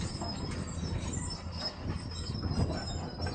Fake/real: real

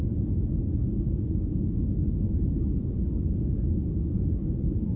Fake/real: real